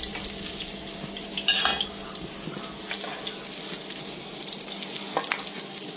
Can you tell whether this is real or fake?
real